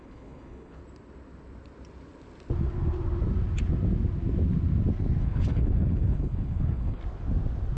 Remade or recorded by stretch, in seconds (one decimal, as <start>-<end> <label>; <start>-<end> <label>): 0.0-0.8 remade; 0.8-5.2 recorded; 5.2-7.0 remade; 7.0-7.8 recorded